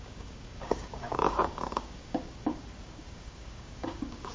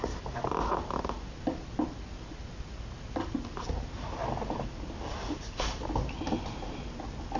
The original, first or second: second